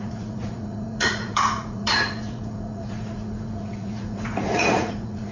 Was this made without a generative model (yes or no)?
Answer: no